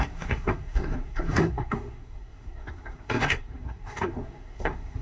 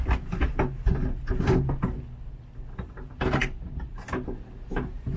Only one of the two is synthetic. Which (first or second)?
first